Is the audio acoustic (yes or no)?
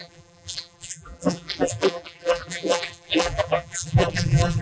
no